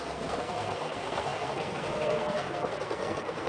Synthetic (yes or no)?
yes